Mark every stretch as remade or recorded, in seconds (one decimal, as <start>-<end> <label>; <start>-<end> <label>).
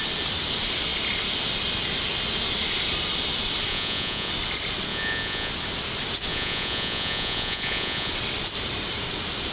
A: 0.0-3.7 recorded; 3.7-4.3 remade; 4.3-4.9 recorded; 4.9-5.5 remade; 5.5-6.3 recorded; 6.3-8.1 remade; 8.1-9.5 recorded